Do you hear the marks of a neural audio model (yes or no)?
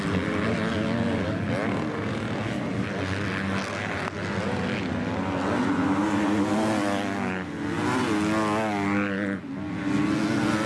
no